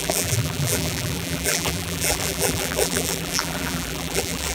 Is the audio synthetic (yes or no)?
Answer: yes